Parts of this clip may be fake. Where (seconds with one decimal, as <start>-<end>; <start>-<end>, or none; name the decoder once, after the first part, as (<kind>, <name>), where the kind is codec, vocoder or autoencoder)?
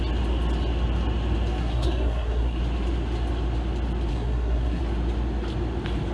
1.6-2.6 (codec, SNAC); 4.1-4.8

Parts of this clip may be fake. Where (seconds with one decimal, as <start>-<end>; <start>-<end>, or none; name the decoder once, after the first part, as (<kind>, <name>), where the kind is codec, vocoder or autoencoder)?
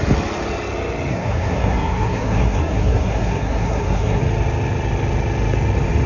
1.1-4.2 (codec, SNAC)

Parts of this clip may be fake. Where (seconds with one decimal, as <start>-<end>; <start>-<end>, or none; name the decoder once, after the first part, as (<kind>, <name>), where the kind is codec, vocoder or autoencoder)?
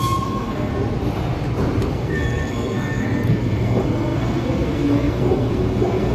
0.0-0.7 (codec, SNAC); 1.9-6.1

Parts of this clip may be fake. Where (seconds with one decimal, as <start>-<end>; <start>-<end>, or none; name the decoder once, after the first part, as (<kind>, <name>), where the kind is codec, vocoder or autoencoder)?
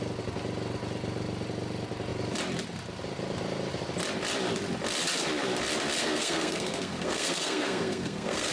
6.0-8.5 (codec, SNAC)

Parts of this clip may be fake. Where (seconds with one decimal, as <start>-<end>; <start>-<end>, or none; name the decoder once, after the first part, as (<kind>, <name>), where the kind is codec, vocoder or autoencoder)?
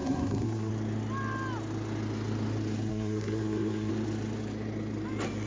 0.0-0.7 (codec, SNAC); 2.9-3.9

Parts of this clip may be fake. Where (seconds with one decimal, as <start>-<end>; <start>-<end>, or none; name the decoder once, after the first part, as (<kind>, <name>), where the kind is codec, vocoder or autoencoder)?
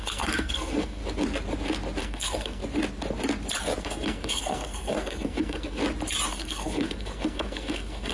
0.0-1.0 (codec, SNAC); 2.0-2.6; 3.8-5.8; 6.3-8.1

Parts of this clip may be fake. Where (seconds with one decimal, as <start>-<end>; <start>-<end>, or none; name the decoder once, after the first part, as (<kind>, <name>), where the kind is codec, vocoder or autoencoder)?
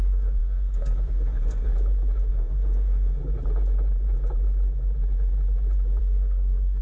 0.0-1.7 (codec, SNAC); 2.3-3.2; 6.0-6.8